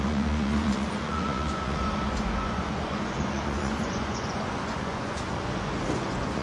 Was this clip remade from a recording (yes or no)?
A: yes